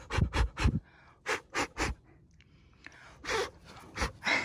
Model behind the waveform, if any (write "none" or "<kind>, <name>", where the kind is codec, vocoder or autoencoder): none